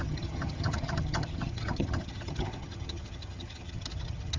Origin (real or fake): fake